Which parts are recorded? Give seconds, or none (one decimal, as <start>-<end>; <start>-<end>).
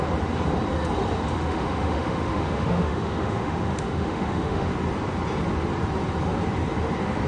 0.0-1.3; 4.7-7.3